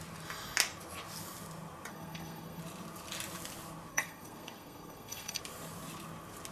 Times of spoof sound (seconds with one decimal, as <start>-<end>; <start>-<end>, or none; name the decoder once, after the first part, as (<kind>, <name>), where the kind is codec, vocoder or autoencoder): 1.9-2.6 (codec, SNAC); 3.9-5.4